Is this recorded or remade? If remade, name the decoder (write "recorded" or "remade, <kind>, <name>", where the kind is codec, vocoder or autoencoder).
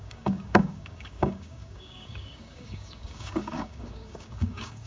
remade, codec, DAC